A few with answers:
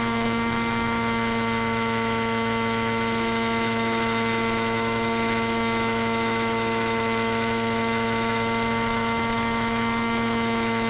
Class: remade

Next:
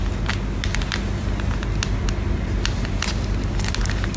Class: recorded